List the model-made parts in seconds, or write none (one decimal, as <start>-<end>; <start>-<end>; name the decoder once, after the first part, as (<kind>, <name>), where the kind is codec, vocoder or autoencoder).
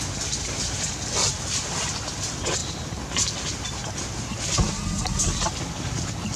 none